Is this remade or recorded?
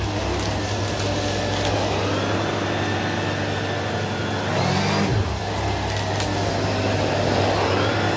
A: recorded